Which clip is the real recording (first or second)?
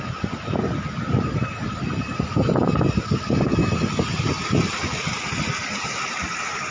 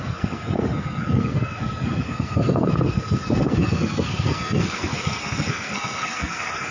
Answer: first